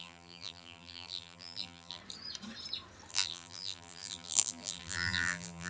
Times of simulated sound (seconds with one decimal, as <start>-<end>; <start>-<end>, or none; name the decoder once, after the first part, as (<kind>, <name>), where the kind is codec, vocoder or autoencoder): 0.0-2.0 (vocoder, BigVGAN v2); 3.1-5.7